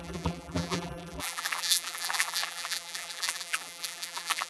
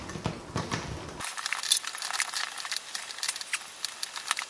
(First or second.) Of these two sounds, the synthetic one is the first